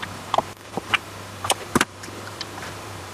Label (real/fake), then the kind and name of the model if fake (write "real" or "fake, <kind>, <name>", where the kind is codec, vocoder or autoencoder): fake, vocoder, BigVGAN v2